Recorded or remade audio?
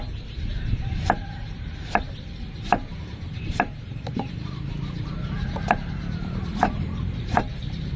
remade